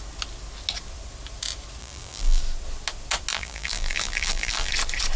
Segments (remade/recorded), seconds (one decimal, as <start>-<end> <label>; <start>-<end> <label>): 0.0-1.8 recorded; 1.8-2.4 remade; 2.4-3.3 recorded; 3.3-4.7 remade; 4.7-5.2 recorded